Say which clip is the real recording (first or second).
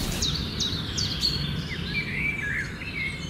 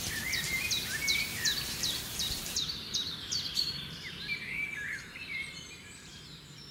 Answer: first